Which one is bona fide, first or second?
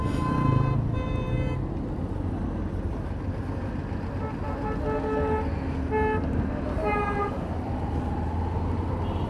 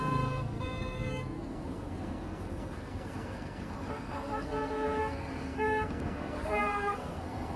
first